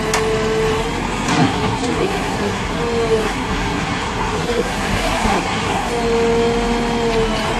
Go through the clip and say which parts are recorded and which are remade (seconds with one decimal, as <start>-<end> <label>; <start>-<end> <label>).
0.0-1.3 recorded; 1.3-2.8 remade; 2.8-3.2 recorded; 3.2-5.9 remade; 5.9-7.6 recorded

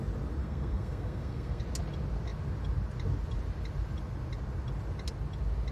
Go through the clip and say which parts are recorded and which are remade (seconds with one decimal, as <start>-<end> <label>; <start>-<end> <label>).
0.0-0.4 recorded; 0.4-1.6 remade; 1.6-5.7 recorded

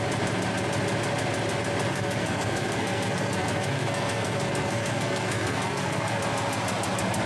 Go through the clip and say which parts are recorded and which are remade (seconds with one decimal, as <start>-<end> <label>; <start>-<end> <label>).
0.0-1.9 recorded; 1.9-6.2 remade; 6.2-7.3 recorded

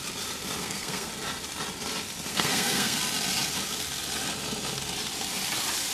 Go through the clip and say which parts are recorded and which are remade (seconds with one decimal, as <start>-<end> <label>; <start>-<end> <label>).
0.0-0.6 recorded; 0.6-1.1 remade; 1.1-2.3 recorded; 2.3-3.0 remade; 3.0-5.9 recorded

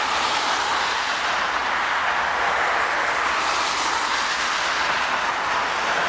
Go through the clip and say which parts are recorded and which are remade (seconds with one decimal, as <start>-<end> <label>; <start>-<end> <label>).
0.0-6.1 recorded

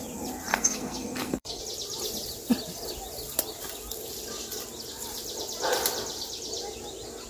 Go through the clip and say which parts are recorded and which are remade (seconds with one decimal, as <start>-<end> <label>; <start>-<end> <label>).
0.0-0.5 recorded; 0.5-1.6 remade; 1.6-7.3 recorded